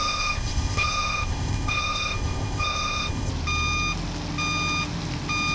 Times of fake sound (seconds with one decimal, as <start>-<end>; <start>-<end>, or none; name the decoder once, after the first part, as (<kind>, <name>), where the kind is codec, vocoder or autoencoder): 0.0-3.3 (codec, ZipCodec)